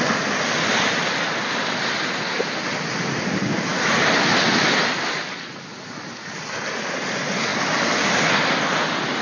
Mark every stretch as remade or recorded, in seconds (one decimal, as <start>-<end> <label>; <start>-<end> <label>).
0.0-9.2 recorded